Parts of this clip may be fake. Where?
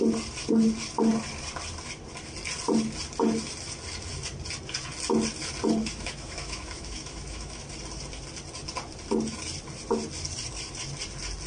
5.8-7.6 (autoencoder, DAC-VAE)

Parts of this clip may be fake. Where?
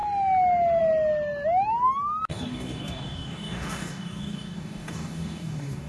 2.3-5.9 (codec, DAC)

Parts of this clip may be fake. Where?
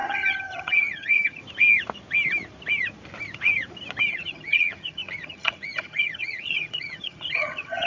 0.0-1.4 (vocoder, HiFi-GAN); 4.1-7.9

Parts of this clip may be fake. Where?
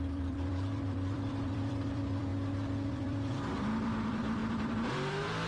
0.0-2.3 (vocoder, BigVGAN v2); 2.9-5.5